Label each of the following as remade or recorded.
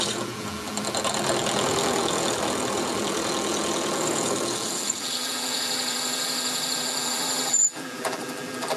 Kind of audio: remade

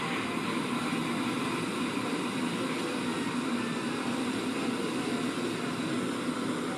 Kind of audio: recorded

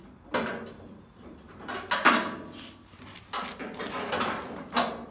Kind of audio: recorded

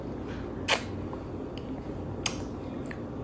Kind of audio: recorded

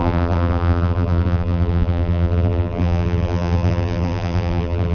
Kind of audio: remade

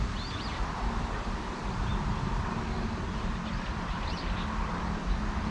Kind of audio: recorded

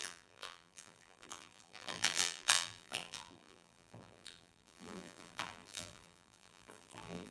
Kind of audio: remade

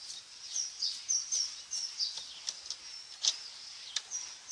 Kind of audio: recorded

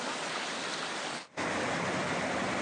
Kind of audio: recorded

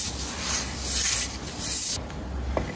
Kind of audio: recorded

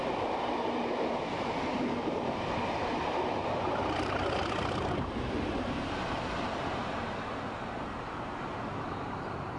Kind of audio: remade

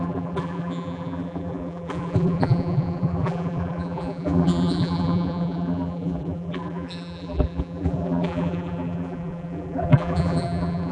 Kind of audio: remade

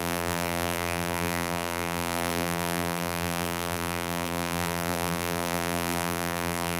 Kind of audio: remade